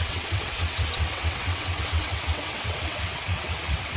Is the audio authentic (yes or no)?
no